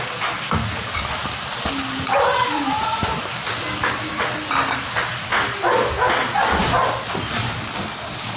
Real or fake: real